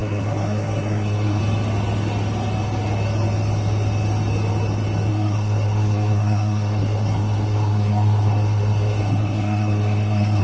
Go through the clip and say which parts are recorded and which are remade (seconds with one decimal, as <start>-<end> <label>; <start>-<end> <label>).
0.0-1.4 remade; 1.4-5.1 recorded; 5.1-10.4 remade